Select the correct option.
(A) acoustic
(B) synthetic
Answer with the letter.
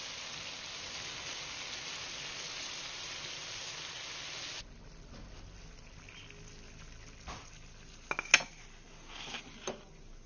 A